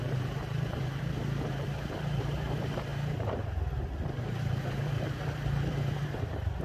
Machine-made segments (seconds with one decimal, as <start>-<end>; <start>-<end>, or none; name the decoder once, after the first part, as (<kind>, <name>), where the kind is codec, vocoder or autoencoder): 0.0-6.6 (vocoder, BigVGAN v2)